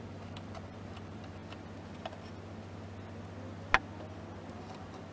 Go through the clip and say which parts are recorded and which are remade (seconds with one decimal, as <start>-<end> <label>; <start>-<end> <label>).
0.0-1.4 remade; 1.4-4.5 recorded; 4.5-5.1 remade